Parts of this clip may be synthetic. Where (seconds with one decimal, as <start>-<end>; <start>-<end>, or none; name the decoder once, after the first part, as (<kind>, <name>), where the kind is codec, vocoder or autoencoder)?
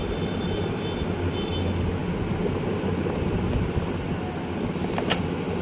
none